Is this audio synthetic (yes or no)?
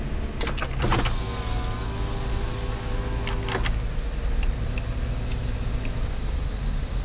no